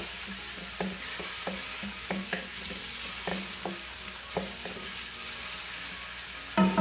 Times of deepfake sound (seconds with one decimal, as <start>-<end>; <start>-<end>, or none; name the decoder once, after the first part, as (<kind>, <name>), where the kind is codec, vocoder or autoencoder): 1.7-2.5 (codec, DAC); 3.3-4.3